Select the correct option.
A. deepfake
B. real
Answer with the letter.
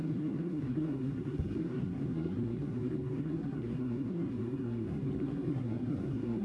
A